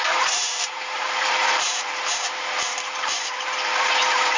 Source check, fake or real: fake